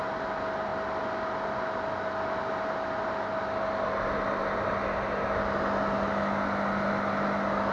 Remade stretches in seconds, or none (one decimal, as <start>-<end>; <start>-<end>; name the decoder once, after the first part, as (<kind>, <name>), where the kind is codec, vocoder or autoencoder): none

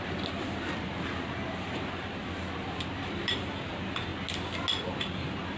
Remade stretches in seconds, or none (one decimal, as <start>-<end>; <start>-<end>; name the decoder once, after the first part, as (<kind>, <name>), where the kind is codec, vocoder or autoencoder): none

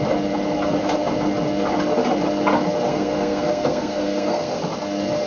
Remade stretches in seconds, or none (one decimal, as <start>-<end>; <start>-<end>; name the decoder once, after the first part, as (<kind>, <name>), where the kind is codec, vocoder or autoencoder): 2.9-4.6 (codec, SNAC)